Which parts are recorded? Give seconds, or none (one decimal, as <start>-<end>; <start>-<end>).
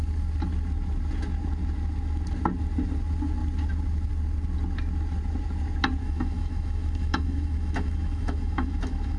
0.0-6.0